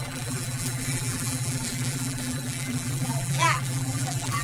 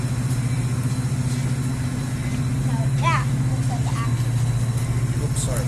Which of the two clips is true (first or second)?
second